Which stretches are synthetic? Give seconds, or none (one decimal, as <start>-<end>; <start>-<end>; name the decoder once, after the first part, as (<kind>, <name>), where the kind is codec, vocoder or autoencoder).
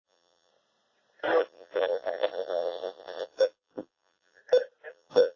0.0-0.5 (vocoder, BigVGAN v2); 1.4-4.4; 4.9-5.4